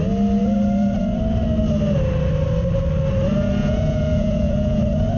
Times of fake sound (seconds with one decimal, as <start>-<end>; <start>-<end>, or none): 3.6-4.8